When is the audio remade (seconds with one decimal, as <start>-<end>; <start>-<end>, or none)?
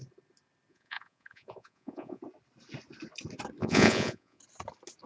0.7-2.2; 3.6-4.4